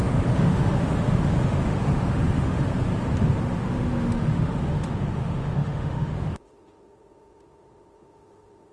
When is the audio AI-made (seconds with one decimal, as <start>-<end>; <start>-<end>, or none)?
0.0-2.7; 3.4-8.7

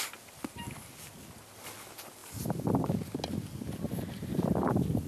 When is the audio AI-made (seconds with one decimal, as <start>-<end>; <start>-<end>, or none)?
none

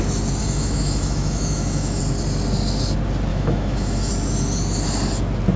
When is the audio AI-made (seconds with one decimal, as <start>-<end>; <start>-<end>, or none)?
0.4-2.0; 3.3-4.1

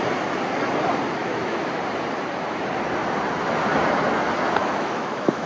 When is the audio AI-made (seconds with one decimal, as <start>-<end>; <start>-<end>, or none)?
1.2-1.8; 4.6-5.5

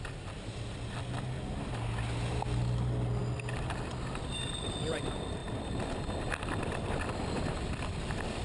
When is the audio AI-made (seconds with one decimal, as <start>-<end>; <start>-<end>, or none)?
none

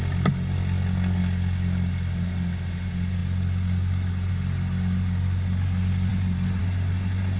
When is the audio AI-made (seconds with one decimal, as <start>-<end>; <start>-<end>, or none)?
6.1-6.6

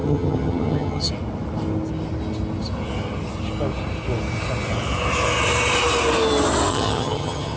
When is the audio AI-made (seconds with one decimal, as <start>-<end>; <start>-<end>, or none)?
0.0-1.1; 6.7-7.6